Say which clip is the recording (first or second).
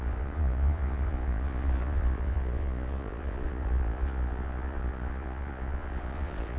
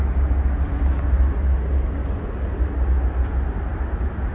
second